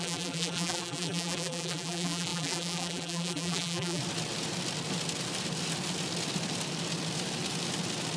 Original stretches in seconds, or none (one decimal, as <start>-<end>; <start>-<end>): 4.0-8.2